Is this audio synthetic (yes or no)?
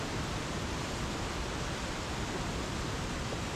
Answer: no